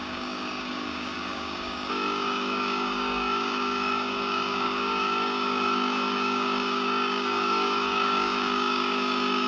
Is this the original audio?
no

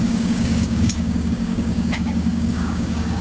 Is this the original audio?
no